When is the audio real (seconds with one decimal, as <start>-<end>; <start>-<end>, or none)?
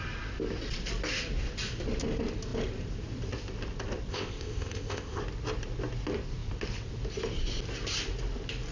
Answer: 0.0-4.1; 5.2-8.7